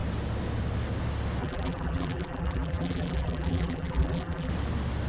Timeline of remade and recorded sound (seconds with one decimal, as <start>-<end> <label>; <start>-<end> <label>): 0.0-1.4 recorded; 1.4-4.5 remade; 4.5-5.1 recorded